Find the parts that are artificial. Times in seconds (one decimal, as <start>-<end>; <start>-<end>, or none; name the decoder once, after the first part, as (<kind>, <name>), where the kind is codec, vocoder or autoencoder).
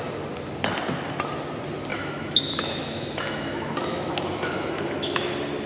1.9-5.3 (autoencoder, DAC-VAE)